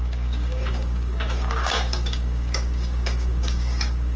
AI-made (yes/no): yes